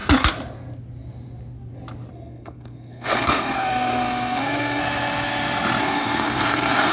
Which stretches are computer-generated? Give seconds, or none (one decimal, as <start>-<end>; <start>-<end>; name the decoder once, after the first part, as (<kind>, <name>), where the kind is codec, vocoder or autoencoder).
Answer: 2.1-4.8 (codec, SNAC); 5.8-6.9